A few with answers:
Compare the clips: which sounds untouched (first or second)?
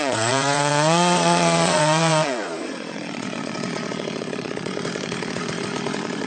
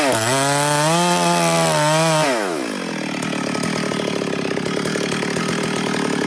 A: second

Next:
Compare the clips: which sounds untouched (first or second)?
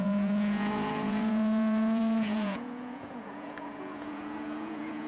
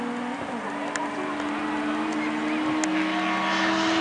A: second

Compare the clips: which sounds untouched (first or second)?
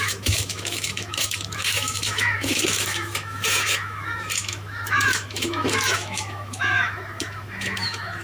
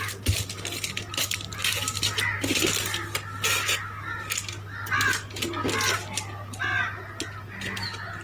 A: second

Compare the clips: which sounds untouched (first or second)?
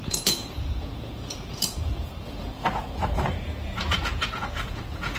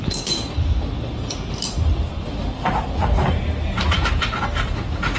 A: second